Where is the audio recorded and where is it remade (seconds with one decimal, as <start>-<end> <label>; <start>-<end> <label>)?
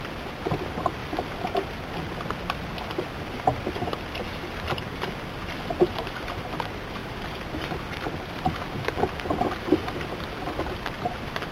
0.0-11.5 recorded